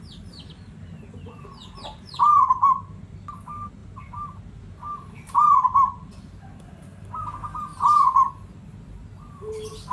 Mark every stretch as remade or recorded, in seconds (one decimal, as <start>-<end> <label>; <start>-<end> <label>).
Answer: 0.0-3.8 recorded; 3.8-7.1 remade; 7.1-7.7 recorded; 7.7-8.3 remade; 8.3-9.9 recorded

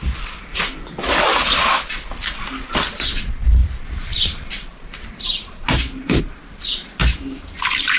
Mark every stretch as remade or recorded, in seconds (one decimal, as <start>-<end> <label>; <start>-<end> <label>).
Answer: 0.0-3.6 recorded; 3.6-6.2 remade; 6.2-8.0 recorded

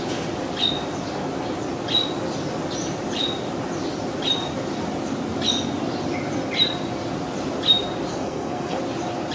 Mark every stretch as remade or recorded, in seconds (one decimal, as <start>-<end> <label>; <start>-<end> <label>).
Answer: 0.0-8.1 recorded; 8.1-8.8 remade; 8.8-9.3 recorded

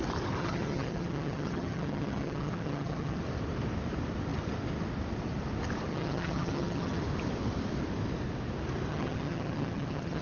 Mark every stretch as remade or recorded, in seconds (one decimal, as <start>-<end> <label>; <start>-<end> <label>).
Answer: 0.0-0.4 recorded; 0.4-3.2 remade; 3.2-5.9 recorded; 5.9-7.0 remade; 7.0-8.9 recorded; 8.9-10.2 remade

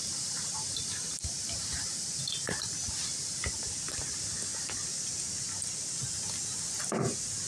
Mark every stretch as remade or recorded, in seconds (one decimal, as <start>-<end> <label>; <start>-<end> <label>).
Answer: 0.0-2.6 remade; 2.6-7.5 recorded

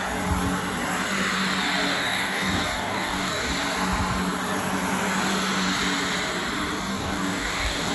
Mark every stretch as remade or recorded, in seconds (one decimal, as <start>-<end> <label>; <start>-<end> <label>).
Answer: 0.0-1.9 recorded; 1.9-3.5 remade; 3.5-6.9 recorded; 6.9-7.9 remade

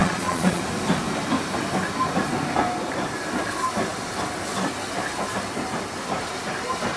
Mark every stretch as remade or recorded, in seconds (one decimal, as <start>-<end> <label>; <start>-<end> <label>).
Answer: 0.0-0.6 remade; 0.6-7.0 recorded

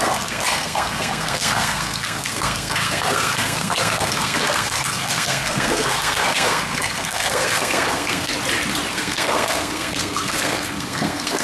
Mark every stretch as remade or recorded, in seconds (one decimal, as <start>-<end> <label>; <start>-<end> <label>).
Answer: 0.0-8.3 remade; 8.3-8.9 recorded; 8.9-11.4 remade